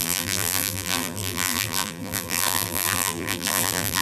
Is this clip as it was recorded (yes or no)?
no